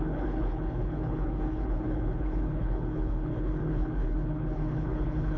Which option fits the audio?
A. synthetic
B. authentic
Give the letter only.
A